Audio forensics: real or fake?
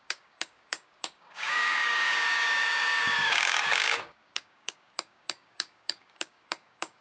fake